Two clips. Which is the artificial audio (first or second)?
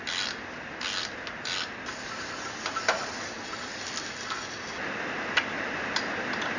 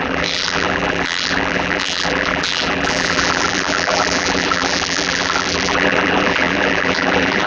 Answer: second